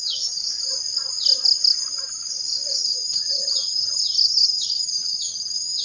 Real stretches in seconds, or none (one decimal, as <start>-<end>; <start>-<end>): 0.4-2.8